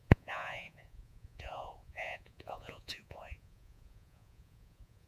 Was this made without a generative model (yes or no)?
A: no